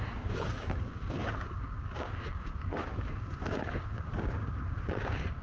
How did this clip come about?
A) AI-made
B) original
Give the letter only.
A